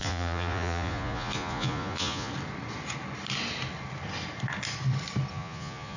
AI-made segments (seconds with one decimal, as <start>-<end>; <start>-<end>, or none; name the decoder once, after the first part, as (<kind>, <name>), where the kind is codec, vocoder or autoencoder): 0.0-2.3 (vocoder, Vocos); 5.3-6.0